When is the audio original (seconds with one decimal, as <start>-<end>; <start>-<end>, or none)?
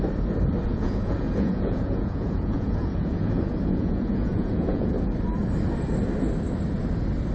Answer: 0.0-0.7; 5.1-7.3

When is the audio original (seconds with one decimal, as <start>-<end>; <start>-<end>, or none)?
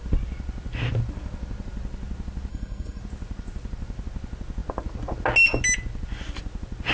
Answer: 0.0-2.5; 3.0-6.9